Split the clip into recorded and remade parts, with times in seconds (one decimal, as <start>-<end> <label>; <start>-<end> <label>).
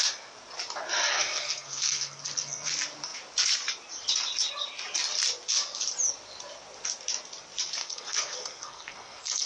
0.0-1.1 recorded; 1.1-2.7 remade; 2.7-7.8 recorded; 7.8-9.5 remade